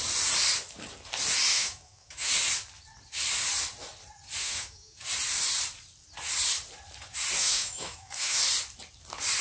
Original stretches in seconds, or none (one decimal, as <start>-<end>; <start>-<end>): 0.0-1.5; 2.3-4.4; 5.1-7.4; 8.4-9.4